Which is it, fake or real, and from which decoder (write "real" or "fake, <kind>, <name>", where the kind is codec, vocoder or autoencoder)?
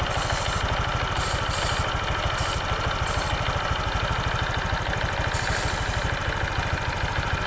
real